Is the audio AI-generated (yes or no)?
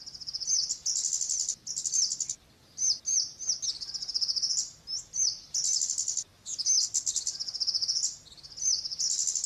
no